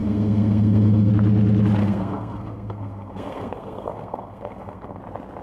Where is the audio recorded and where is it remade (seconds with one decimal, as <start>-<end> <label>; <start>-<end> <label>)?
0.0-1.1 remade; 1.1-1.8 recorded; 1.8-5.0 remade; 5.0-5.4 recorded